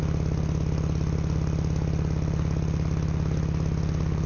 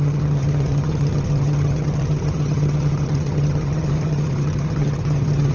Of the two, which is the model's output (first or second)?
second